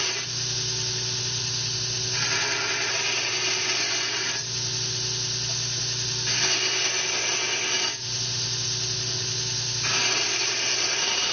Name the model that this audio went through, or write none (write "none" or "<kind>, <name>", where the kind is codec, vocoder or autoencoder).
none